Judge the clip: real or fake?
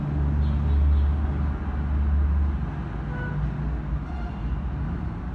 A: real